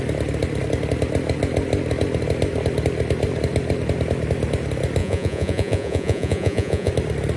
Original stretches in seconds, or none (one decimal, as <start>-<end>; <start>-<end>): 0.0-5.0; 6.9-7.4